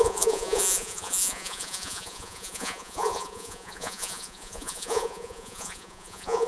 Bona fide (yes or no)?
no